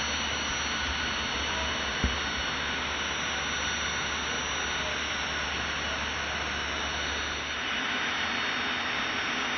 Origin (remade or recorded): recorded